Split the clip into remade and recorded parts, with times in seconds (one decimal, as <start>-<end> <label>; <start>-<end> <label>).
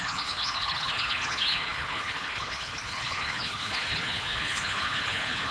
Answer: 0.0-5.5 remade